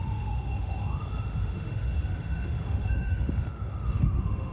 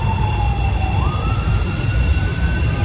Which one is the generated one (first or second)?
first